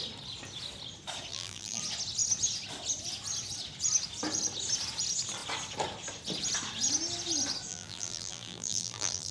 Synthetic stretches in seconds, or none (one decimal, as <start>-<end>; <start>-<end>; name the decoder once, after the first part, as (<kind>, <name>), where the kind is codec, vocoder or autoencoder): 1.3-1.8 (vocoder, BigVGAN v2); 7.7-9.3